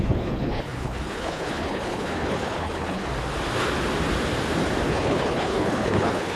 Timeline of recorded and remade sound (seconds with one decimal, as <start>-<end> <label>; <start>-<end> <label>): 0.0-3.0 remade; 3.0-4.9 recorded; 4.9-6.4 remade